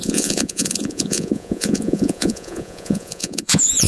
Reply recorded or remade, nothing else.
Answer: remade